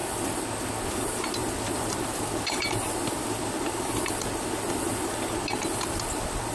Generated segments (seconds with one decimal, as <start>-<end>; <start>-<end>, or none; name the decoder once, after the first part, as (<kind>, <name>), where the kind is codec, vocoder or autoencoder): 1.4-5.3 (vocoder, BigVGAN v2)